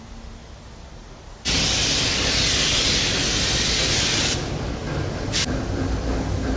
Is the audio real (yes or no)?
yes